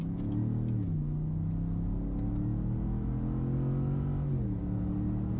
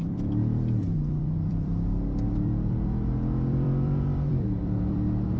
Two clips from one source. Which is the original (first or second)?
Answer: first